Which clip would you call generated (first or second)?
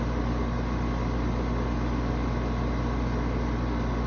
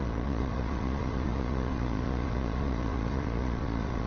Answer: second